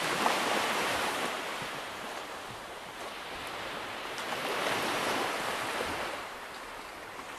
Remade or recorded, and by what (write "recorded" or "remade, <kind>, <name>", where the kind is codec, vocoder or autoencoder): remade, vocoder, BigVGAN v2